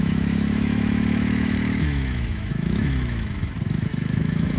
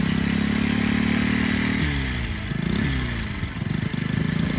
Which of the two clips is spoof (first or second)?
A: first